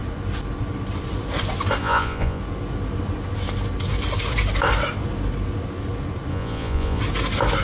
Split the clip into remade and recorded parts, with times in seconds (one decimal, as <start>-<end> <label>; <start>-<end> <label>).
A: 0.0-1.8 recorded; 1.8-2.4 remade; 2.4-6.3 recorded; 6.3-7.0 remade; 7.0-7.6 recorded